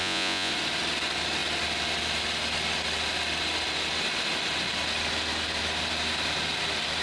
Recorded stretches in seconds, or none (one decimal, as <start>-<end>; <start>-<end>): 0.5-7.0